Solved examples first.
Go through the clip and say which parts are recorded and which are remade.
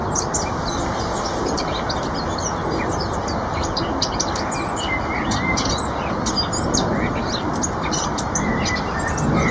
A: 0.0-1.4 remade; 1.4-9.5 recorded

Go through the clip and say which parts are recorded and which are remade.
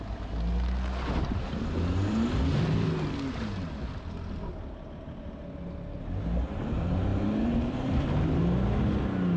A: 0.0-7.1 recorded; 7.1-8.0 remade; 8.0-9.4 recorded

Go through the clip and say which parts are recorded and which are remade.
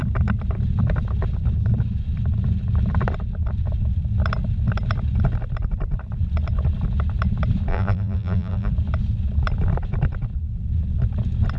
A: 0.0-7.7 recorded; 7.7-8.7 remade; 8.7-11.6 recorded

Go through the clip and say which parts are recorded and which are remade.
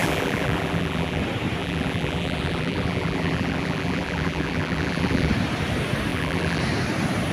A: 0.0-1.2 remade; 1.2-1.6 recorded; 1.6-5.3 remade; 5.3-6.1 recorded; 6.1-6.6 remade; 6.6-7.3 recorded